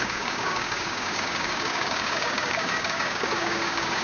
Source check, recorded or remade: remade